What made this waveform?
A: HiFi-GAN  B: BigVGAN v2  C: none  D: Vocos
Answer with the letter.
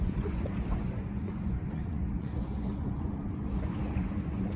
D